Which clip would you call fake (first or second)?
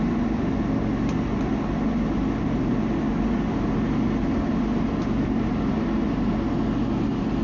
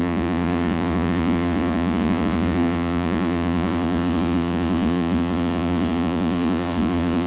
second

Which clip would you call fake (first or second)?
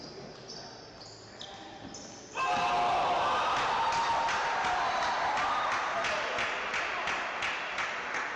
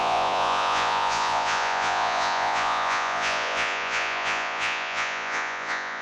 second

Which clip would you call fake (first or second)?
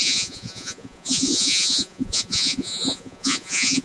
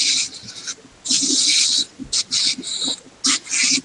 first